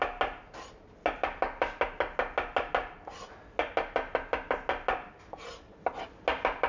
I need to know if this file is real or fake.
real